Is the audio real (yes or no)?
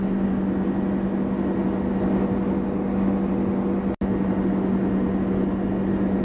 yes